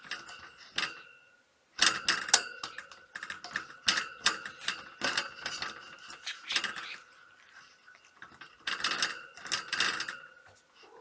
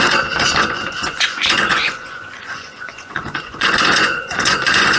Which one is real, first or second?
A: first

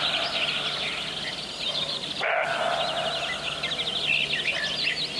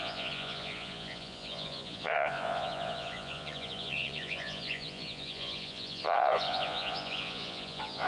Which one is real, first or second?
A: first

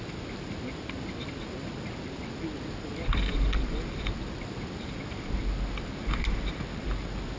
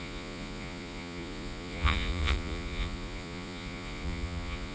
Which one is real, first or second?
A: first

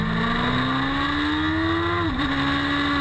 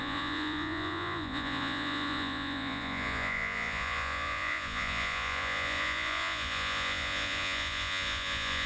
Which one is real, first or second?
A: first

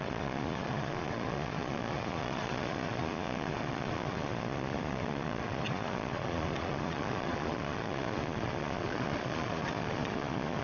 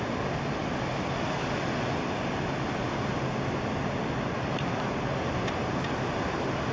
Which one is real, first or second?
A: second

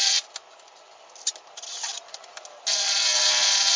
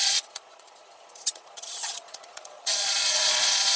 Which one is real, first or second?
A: first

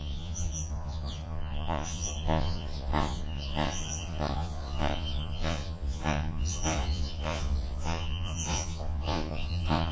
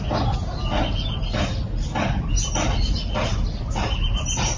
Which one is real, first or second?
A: second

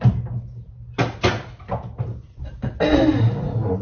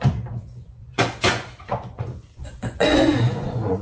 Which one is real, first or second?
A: first